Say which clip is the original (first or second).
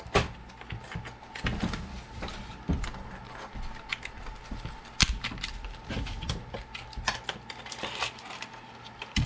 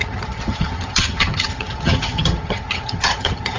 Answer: first